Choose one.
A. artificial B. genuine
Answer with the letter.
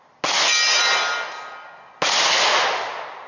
B